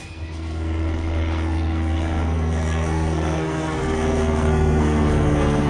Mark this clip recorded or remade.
remade